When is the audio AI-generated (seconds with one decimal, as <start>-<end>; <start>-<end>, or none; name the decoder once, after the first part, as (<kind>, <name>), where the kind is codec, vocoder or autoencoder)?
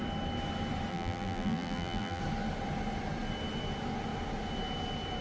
0.9-2.2 (vocoder, BigVGAN v2)